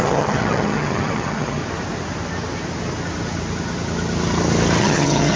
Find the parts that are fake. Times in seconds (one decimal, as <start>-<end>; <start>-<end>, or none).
0.0-1.6; 4.8-5.4